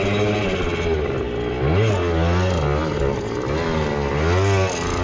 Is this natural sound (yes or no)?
yes